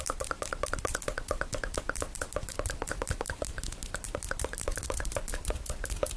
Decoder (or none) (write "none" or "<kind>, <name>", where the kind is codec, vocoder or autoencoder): vocoder, BigVGAN v2